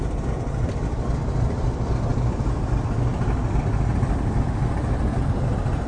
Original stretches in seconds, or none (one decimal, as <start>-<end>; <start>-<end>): 0.0-5.9